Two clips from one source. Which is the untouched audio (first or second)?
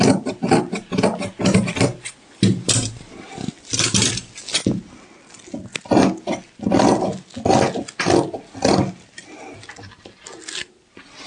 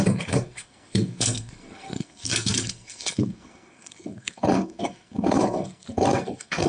first